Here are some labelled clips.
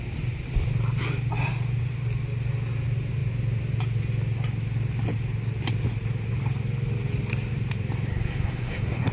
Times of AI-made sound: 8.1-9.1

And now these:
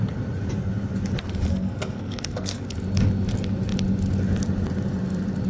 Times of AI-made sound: 1.5-2.7

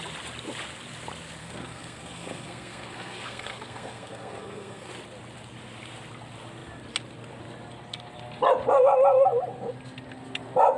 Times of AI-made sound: 1.4-4.9